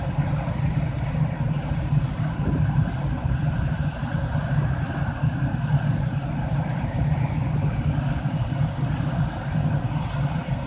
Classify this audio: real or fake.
real